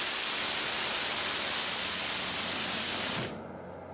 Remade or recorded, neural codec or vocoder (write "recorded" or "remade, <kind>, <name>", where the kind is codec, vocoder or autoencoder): recorded